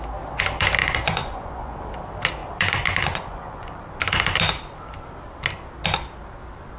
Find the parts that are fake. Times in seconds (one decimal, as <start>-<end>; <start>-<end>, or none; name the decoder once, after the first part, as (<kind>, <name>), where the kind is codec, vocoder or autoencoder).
0.8-1.8 (vocoder, Vocos); 2.4-3.8